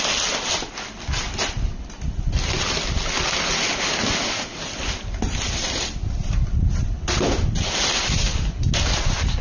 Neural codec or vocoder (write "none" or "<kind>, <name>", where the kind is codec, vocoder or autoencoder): none